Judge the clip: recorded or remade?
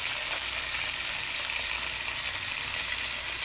recorded